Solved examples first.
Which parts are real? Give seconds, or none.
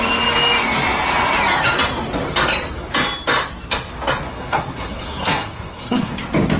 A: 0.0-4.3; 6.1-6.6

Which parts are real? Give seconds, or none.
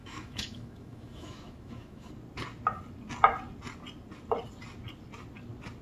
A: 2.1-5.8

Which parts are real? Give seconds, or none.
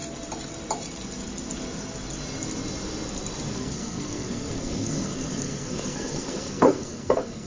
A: 0.0-3.5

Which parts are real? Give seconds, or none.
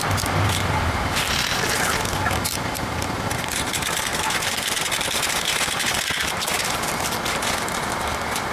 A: 0.0-4.1; 6.6-8.5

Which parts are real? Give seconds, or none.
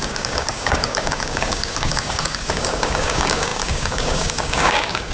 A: none